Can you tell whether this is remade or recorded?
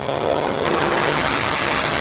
remade